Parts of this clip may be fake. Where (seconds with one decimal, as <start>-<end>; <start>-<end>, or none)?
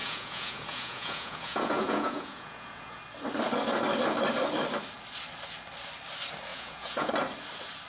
0.0-3.0; 6.5-7.1